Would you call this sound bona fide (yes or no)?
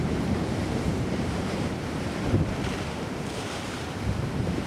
no